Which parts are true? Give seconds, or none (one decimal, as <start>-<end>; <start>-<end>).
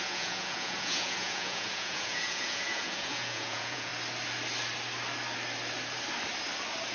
3.9-6.9